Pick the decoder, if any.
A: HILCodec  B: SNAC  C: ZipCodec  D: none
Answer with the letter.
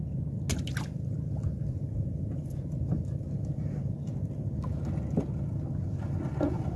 D